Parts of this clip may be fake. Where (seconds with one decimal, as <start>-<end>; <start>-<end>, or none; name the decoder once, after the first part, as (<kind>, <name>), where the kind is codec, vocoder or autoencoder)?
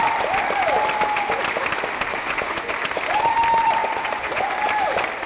2.1-2.7 (vocoder, Vocos); 3.8-4.5